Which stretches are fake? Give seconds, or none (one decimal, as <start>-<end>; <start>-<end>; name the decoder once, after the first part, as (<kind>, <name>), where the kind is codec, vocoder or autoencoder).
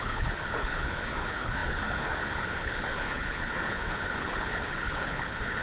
0.0-5.6 (codec, HILCodec)